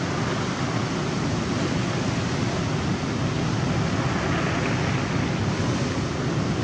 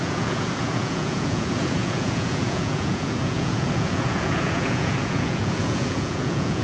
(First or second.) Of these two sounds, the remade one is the second